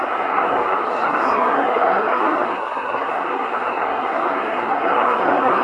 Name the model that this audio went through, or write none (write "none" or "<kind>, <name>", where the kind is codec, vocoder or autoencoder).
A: codec, SNAC